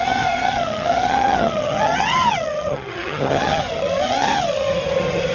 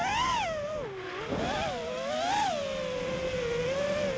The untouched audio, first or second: second